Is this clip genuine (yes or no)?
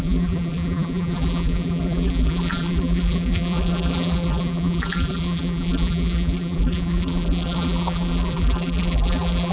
no